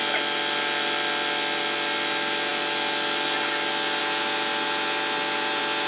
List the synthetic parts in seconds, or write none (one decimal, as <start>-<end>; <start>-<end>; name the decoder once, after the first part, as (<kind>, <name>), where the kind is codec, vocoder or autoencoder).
none